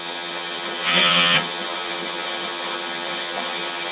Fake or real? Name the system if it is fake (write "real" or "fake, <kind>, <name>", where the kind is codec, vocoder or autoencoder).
fake, vocoder, HiFi-GAN